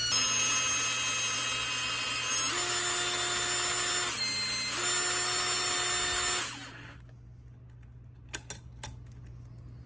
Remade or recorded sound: recorded